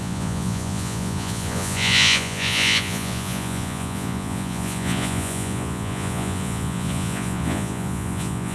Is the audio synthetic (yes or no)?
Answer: yes